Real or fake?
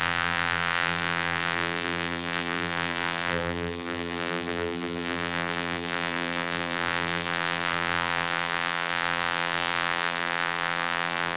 fake